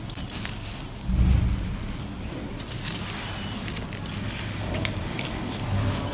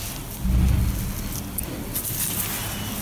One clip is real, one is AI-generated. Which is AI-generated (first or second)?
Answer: first